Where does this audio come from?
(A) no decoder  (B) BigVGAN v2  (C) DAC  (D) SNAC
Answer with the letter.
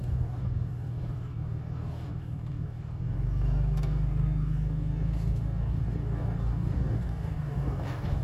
C